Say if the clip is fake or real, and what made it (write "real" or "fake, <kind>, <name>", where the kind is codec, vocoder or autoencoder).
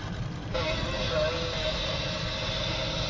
real